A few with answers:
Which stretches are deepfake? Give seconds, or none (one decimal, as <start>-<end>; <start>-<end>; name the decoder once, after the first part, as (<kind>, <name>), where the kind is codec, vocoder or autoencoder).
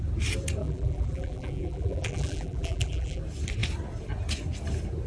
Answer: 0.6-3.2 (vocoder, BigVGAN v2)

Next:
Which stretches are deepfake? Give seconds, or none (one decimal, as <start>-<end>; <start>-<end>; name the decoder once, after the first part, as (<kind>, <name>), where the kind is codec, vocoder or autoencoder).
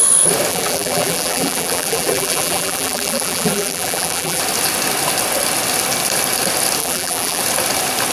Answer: 0.5-4.4 (vocoder, BigVGAN v2); 6.8-7.4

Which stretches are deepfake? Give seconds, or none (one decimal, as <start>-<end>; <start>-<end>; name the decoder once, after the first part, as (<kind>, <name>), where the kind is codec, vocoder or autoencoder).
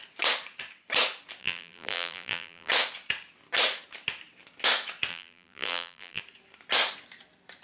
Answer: 1.4-2.7 (vocoder, BigVGAN v2); 5.1-6.2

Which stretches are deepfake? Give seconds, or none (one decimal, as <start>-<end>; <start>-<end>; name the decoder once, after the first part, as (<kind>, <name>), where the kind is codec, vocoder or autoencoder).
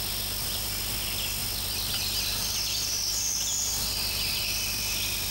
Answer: 1.4-2.6 (vocoder, BigVGAN v2); 3.9-4.4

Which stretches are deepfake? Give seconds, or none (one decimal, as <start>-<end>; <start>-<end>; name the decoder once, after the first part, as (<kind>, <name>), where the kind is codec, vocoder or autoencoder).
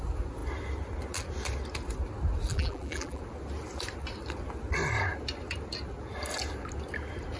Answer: 2.5-3.2 (vocoder, BigVGAN v2)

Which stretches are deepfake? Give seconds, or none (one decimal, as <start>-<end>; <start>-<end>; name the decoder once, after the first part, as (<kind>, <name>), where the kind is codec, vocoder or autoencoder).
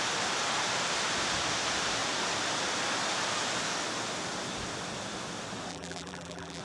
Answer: 5.7-6.6 (vocoder, BigVGAN v2)